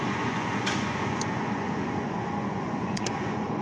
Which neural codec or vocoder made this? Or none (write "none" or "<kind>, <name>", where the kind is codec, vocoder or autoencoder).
vocoder, Vocos